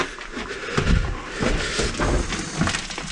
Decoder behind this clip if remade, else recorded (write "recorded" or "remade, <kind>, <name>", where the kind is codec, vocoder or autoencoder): recorded